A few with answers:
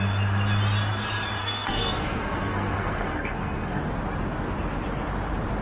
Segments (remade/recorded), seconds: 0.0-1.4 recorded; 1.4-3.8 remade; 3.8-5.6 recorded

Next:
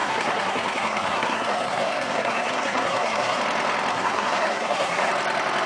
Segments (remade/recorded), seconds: 0.0-3.4 remade; 3.4-3.9 recorded; 3.9-5.1 remade; 5.1-5.7 recorded

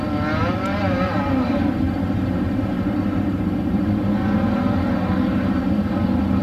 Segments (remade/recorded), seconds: 0.0-0.7 recorded; 0.7-4.1 remade; 4.1-6.4 recorded

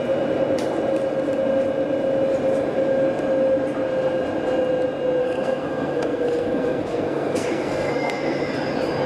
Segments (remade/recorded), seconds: 0.0-5.2 recorded; 5.2-8.4 remade; 8.4-9.1 recorded

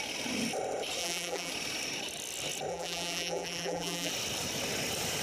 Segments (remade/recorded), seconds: 0.0-1.0 recorded; 1.0-1.5 remade; 1.5-2.7 recorded; 2.7-4.1 remade; 4.1-5.2 recorded

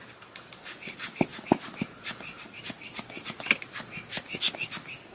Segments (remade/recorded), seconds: 0.0-5.1 recorded